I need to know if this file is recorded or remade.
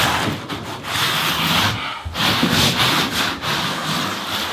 recorded